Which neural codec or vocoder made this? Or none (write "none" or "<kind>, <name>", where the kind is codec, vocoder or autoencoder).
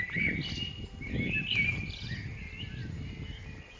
none